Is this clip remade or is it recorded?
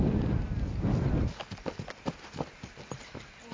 recorded